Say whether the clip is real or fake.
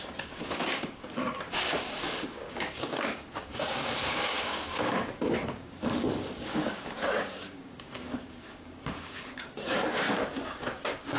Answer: fake